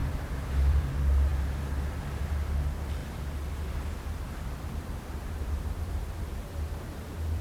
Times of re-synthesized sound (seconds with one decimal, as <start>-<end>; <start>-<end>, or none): 0.0-0.9; 3.0-7.4